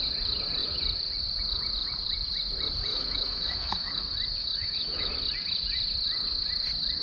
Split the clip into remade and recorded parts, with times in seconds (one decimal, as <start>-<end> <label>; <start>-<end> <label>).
0.0-2.9 recorded; 2.9-4.0 remade; 4.0-4.4 recorded; 4.4-5.1 remade; 5.1-7.0 recorded